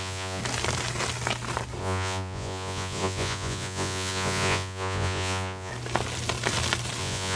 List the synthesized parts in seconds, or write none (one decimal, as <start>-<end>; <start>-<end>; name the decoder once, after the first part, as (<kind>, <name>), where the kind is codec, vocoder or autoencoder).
0.0-0.4 (vocoder, Vocos); 1.8-5.7; 7.0-7.4